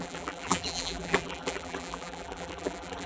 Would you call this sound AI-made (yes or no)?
yes